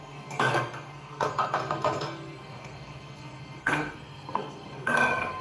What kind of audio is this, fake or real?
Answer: fake